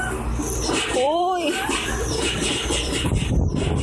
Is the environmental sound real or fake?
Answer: fake